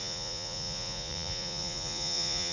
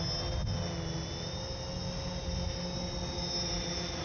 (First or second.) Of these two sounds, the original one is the second